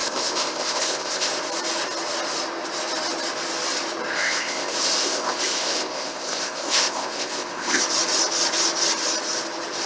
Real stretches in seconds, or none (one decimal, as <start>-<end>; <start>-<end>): 1.3-4.1; 7.8-9.9

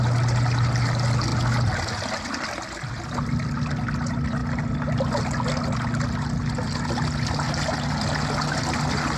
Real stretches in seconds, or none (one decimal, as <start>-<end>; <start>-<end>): 0.0-9.2

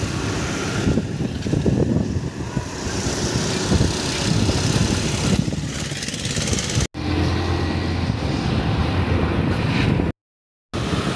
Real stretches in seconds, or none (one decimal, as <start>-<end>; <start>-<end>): 0.0-8.8; 9.8-11.2